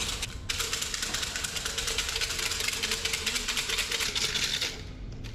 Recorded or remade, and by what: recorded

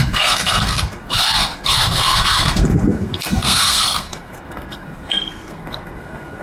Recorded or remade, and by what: remade, codec, SNAC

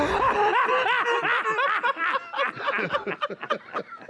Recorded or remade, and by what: recorded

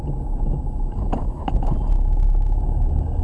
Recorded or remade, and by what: recorded